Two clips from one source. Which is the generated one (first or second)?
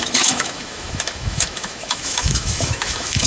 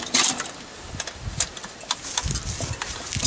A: first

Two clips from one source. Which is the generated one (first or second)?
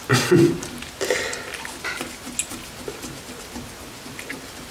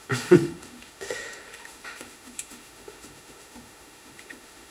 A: second